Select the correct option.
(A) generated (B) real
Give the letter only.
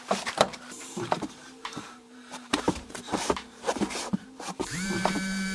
A